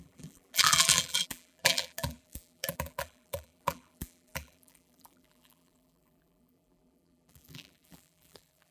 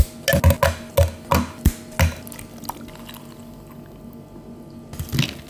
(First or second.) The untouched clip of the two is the second